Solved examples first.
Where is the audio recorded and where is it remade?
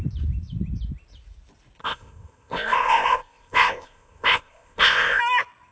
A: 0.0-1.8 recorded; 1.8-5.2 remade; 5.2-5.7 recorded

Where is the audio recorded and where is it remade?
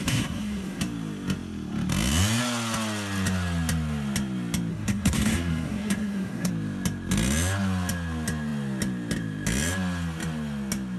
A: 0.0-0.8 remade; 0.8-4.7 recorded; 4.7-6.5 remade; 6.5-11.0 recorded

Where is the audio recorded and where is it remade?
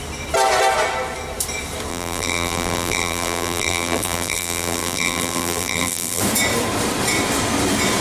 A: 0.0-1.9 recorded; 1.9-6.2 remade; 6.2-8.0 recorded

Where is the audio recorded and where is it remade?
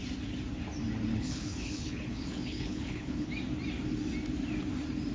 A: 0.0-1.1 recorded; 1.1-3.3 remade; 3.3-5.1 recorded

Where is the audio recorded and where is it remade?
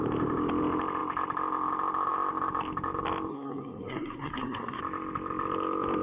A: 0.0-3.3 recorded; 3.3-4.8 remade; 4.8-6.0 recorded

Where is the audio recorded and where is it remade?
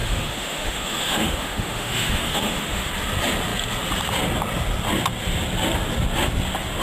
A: 0.0-2.9 remade; 2.9-6.8 recorded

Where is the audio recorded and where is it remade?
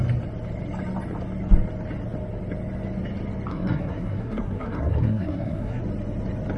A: 0.0-3.5 recorded; 3.5-5.8 remade; 5.8-6.6 recorded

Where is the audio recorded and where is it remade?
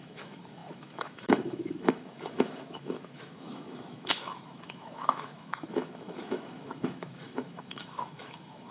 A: 0.0-8.7 remade